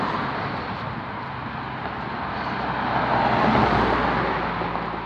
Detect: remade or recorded recorded